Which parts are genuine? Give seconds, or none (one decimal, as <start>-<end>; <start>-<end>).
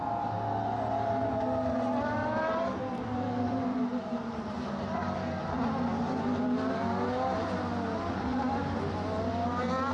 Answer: 0.0-2.2; 2.8-3.7; 4.5-9.9